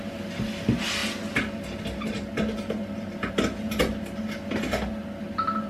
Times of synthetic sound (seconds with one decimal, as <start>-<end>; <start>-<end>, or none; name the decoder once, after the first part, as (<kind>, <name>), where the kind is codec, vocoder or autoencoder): none